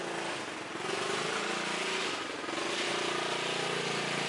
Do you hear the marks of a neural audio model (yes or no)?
no